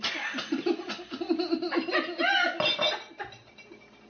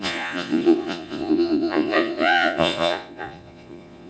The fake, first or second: second